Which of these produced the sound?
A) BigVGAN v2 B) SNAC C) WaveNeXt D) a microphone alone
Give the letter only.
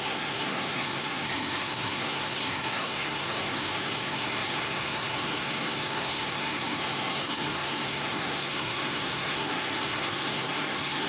B